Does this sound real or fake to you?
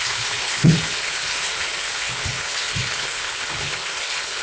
fake